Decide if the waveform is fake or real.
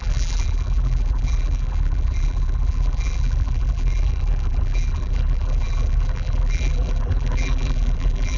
fake